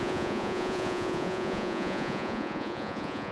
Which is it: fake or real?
fake